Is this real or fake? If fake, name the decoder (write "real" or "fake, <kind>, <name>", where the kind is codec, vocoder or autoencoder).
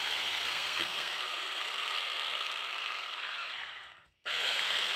fake, codec, SNAC